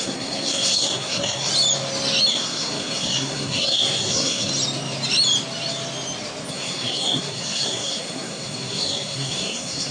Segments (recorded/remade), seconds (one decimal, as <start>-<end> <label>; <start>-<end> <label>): 0.0-1.5 remade; 1.5-2.3 recorded; 2.3-4.5 remade; 4.5-6.5 recorded; 6.5-9.9 remade